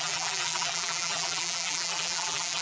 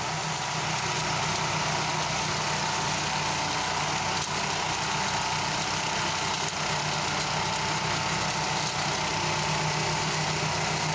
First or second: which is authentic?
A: second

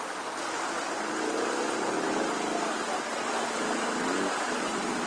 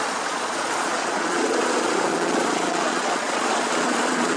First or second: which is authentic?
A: first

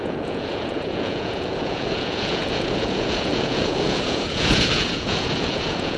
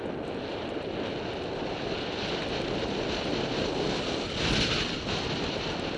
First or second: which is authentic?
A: second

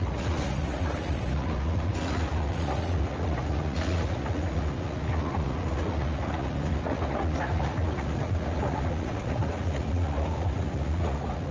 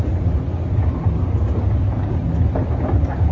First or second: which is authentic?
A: second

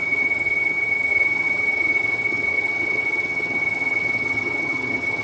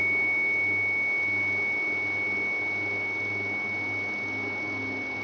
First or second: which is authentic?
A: second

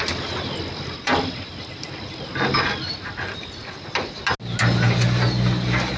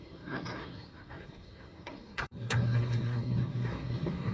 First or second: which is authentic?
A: first